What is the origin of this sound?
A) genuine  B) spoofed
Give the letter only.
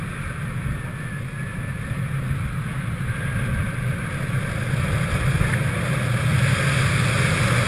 A